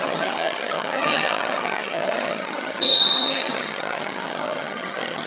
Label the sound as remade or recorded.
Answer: remade